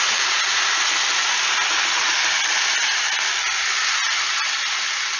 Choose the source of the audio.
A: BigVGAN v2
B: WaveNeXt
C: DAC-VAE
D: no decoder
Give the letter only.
D